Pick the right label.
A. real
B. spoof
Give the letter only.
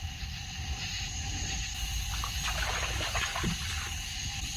A